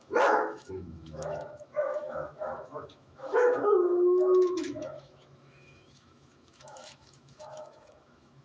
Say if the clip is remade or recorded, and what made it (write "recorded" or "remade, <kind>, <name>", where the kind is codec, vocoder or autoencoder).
remade, autoencoder, DAC-VAE